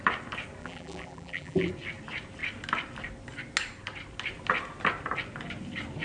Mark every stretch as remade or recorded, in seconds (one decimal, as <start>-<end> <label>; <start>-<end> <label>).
0.0-0.6 recorded; 0.6-1.7 remade; 1.7-6.0 recorded